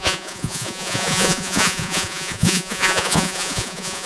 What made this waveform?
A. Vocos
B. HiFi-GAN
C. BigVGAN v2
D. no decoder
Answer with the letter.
A